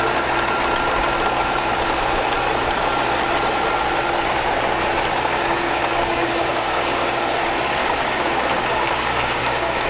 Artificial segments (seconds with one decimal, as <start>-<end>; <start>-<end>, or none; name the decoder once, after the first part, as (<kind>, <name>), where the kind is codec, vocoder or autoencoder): 5.1-7.3 (codec, DAC); 7.8-9.4

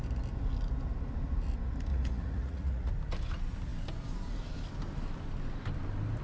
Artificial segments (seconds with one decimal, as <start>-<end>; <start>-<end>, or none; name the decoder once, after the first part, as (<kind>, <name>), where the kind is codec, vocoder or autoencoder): 1.9-2.9 (vocoder, Vocos)

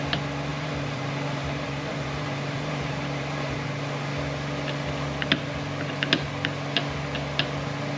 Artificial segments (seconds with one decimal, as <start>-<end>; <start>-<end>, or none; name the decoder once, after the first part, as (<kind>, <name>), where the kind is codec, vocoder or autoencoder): 0.5-3.7 (vocoder, BigVGAN v2)

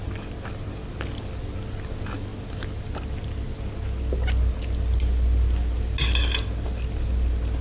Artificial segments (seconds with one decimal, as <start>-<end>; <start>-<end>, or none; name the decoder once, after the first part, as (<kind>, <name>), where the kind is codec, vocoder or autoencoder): none

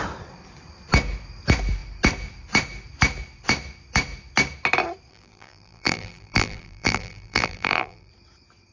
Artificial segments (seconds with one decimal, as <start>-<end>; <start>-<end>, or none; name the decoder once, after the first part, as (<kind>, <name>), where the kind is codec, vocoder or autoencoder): 5.1-8.1 (vocoder, BigVGAN v2)

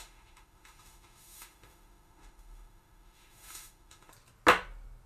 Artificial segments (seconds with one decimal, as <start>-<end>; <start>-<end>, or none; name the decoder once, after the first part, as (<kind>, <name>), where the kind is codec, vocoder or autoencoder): 0.0-4.1 (autoencoder, DAC-VAE)